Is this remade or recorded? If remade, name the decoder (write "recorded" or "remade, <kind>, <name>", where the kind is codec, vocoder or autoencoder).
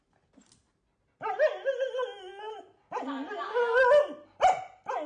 recorded